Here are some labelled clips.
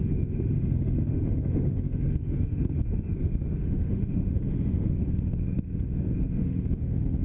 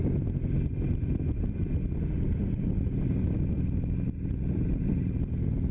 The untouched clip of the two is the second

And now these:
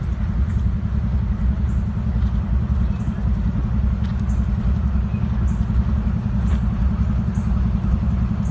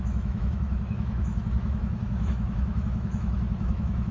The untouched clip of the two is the first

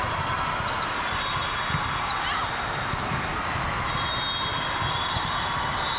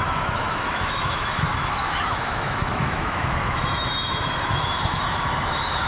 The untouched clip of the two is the first